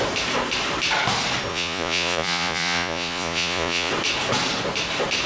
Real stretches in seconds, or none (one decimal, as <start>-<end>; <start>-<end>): 0.0-1.5; 3.9-5.3